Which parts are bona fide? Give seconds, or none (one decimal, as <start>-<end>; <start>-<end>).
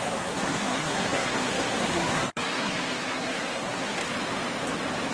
4.0-5.1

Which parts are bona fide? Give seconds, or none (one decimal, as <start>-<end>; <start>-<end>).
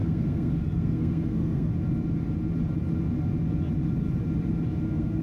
1.7-4.8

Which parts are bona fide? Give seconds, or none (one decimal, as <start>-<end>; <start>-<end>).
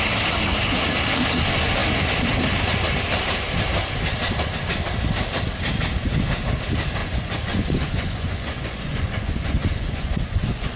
0.0-7.0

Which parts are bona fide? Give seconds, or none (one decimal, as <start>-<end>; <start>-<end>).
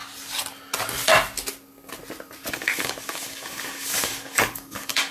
0.0-2.5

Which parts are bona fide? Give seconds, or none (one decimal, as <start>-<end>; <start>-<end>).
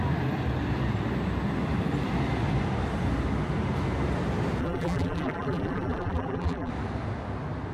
0.0-4.6; 6.7-7.7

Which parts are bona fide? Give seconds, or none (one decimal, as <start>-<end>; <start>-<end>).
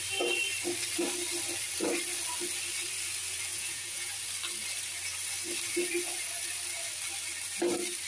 0.0-3.5; 4.1-8.1